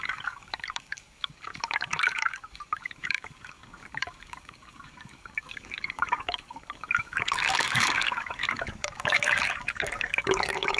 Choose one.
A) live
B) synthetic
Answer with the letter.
B